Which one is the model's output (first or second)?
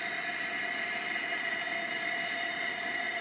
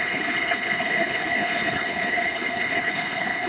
second